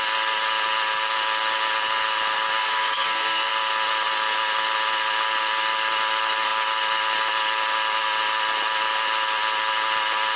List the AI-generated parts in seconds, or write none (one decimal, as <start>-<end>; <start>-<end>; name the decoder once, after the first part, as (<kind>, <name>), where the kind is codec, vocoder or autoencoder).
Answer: 2.6-3.5 (codec, SNAC)